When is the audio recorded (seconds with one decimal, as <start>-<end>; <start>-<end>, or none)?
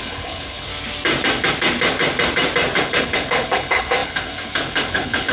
0.7-2.8